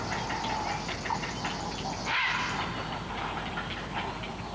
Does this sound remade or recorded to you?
recorded